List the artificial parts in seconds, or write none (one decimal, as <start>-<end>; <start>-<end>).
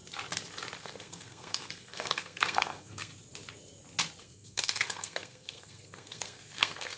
0.8-3.1; 4.2-7.0